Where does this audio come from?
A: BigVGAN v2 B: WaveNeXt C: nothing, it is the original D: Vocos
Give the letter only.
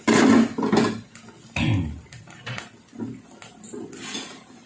C